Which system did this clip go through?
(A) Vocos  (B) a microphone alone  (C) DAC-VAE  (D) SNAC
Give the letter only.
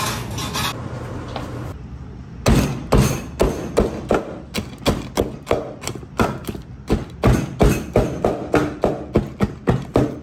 B